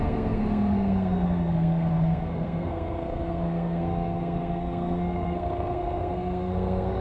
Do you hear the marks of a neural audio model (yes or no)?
yes